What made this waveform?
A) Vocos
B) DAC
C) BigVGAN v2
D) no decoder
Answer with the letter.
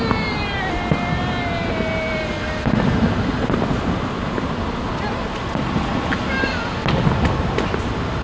D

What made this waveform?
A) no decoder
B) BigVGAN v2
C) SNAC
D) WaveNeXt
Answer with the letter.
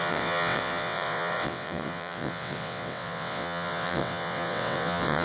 D